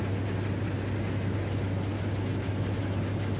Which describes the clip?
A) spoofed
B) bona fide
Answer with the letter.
B